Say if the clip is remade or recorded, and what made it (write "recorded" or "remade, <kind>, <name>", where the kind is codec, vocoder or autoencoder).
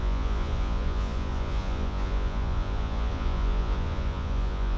remade, vocoder, Vocos